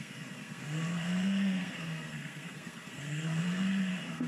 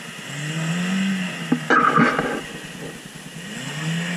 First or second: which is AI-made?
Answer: first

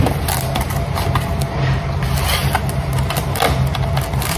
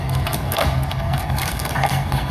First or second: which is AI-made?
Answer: second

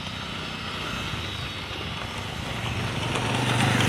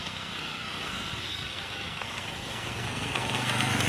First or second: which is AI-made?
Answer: second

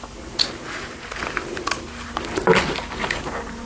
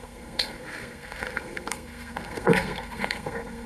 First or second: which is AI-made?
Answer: second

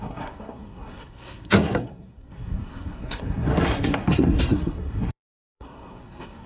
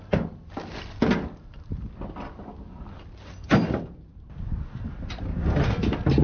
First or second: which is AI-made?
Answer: first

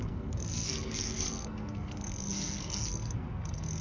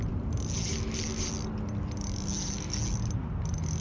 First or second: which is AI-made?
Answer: first